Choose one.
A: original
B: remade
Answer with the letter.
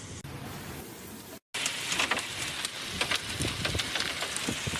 A